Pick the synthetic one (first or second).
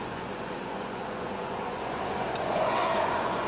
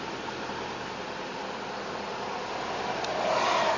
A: first